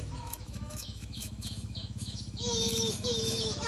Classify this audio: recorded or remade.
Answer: remade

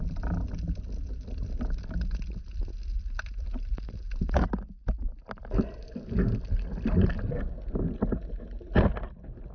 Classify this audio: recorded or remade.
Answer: recorded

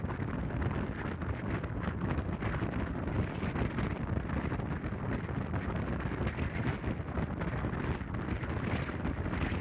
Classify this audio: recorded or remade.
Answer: recorded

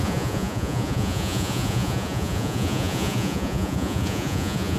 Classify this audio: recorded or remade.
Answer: remade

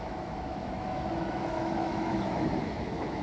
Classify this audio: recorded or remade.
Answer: remade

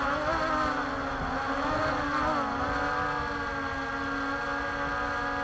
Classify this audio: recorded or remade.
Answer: recorded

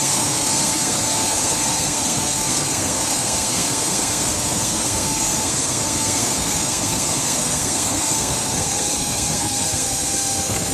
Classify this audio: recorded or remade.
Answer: remade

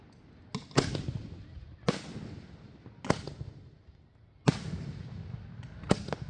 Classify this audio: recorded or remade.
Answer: recorded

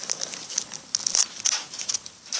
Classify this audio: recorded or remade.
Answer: recorded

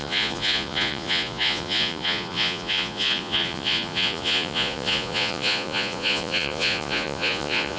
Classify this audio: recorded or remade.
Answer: remade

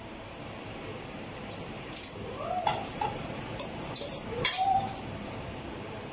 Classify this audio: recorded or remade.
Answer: remade